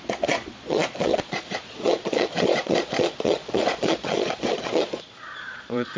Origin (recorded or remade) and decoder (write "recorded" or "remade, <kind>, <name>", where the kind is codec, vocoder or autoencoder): remade, vocoder, Vocos